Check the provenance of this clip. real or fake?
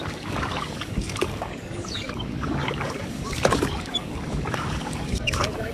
fake